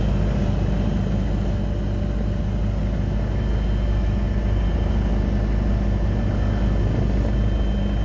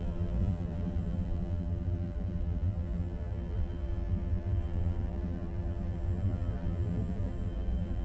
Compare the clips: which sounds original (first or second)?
first